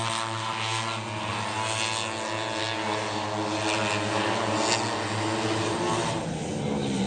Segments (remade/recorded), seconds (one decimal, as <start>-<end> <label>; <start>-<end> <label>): 0.0-7.1 recorded